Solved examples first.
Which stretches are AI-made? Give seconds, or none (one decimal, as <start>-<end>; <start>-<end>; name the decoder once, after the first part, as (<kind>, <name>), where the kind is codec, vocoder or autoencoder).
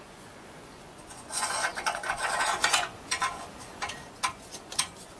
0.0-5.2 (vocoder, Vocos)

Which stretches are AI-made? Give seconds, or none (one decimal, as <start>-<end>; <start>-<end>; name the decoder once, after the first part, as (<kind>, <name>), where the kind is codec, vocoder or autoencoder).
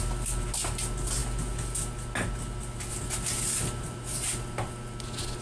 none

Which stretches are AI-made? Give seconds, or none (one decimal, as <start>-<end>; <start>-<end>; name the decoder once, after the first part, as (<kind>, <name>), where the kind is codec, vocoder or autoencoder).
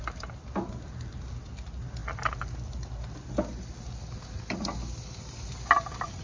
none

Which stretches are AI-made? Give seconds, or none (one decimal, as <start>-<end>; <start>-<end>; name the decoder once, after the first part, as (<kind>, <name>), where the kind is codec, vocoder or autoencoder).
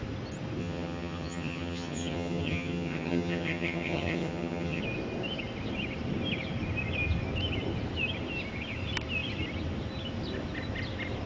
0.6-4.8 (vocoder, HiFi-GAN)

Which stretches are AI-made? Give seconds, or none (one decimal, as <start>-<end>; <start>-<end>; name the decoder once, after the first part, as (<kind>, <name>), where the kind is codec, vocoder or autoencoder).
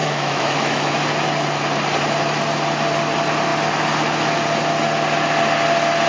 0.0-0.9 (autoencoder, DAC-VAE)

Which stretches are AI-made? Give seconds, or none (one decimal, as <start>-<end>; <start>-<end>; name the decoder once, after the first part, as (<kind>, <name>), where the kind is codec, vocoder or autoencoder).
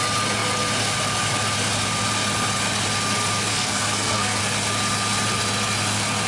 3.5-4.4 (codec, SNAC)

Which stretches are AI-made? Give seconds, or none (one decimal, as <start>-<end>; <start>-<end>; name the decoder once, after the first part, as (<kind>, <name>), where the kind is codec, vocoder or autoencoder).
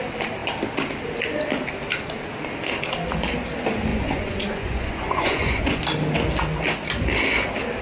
3.9-5.8 (vocoder, Vocos)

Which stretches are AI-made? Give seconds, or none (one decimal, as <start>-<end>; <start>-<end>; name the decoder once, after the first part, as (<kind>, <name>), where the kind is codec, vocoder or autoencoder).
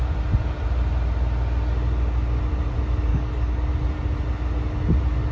3.1-3.7 (codec, DAC)